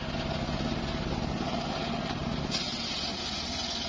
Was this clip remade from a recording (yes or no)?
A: no